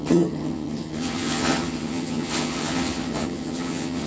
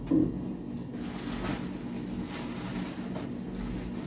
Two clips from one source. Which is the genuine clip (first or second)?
second